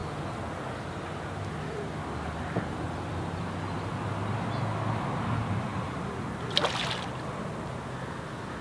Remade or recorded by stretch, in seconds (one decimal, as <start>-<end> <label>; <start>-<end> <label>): 0.0-8.6 recorded